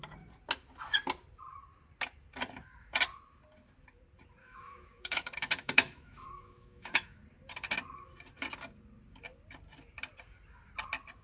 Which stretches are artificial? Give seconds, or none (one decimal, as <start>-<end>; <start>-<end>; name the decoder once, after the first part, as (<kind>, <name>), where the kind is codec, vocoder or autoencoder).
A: 4.4-7.2 (autoencoder, DAC-VAE)